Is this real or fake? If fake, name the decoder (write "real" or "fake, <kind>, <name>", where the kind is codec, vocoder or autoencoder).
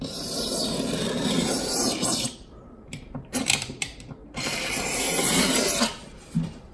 fake, vocoder, BigVGAN v2